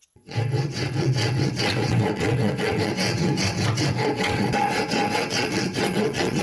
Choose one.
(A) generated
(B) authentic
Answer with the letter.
A